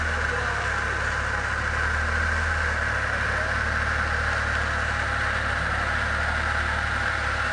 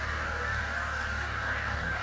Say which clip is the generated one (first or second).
second